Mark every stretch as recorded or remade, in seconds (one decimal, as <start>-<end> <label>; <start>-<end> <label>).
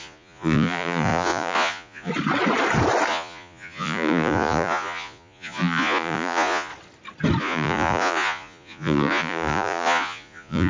0.0-2.1 remade; 2.1-3.1 recorded; 3.1-6.7 remade; 6.7-7.4 recorded; 7.4-10.7 remade